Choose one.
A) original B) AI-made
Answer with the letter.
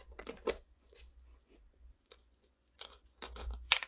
B